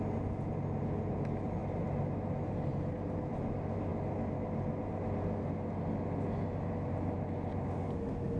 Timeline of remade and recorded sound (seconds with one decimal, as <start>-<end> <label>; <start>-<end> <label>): 0.0-8.4 recorded